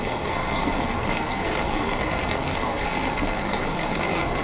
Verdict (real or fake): fake